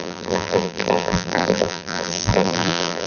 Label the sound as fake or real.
fake